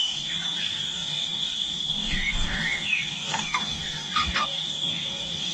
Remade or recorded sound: remade